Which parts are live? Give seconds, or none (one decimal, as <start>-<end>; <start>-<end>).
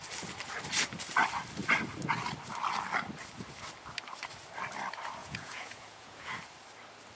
0.0-5.2; 6.3-7.2